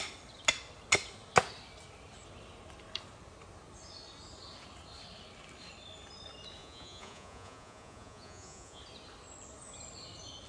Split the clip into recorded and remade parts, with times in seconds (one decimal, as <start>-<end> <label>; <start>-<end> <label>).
0.0-6.6 recorded; 6.6-8.8 remade; 8.8-10.5 recorded